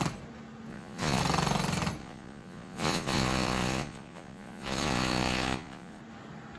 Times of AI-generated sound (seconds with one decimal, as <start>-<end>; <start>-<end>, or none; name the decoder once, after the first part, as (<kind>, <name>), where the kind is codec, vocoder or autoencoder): 0.7-1.2 (vocoder, Vocos); 2.0-6.0